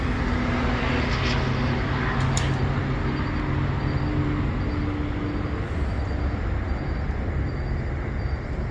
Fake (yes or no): no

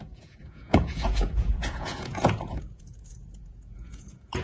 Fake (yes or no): yes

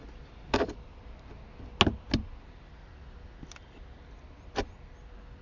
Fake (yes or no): no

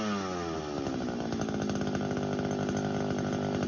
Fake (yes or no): no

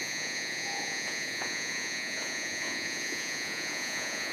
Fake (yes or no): yes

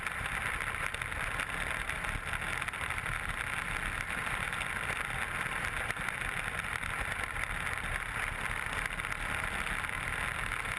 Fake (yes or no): no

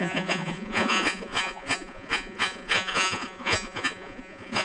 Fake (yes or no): yes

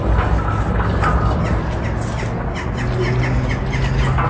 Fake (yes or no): no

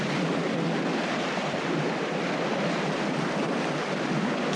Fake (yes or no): no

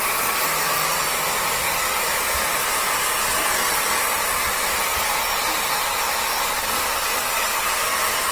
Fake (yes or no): no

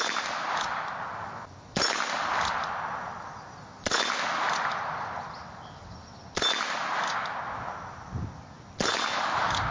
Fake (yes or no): no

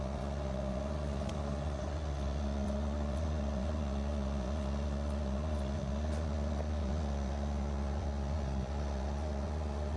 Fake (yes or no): yes